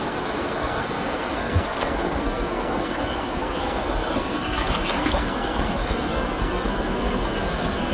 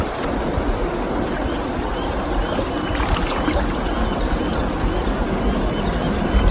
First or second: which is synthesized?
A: first